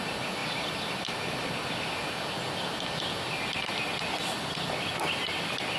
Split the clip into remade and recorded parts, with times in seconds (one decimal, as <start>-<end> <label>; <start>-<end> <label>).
0.0-5.8 recorded